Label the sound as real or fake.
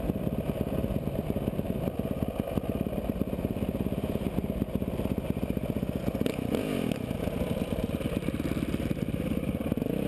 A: fake